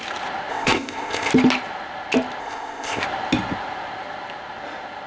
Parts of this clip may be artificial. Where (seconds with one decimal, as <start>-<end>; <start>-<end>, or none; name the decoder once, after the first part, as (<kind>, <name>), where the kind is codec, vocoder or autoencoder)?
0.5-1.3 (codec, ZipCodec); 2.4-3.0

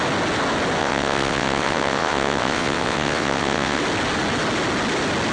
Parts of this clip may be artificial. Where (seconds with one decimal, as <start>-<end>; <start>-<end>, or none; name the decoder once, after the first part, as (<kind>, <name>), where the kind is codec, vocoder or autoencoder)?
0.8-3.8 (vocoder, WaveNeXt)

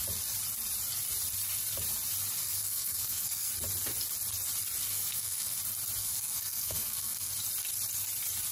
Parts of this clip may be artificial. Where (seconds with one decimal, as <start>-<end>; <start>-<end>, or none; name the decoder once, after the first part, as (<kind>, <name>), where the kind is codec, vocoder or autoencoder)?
2.4-3.5 (codec, SNAC); 4.9-5.6; 6.0-7.3